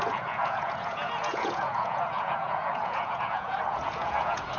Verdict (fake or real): fake